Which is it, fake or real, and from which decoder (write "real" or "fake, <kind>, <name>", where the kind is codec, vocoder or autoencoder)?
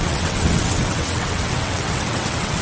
fake, vocoder, WaveNeXt